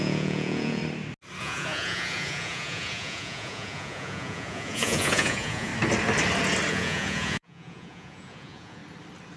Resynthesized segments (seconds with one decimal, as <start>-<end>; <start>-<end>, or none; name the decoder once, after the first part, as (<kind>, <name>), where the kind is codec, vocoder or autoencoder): 0.0-0.8 (vocoder, Vocos); 1.4-5.7; 6.7-8.8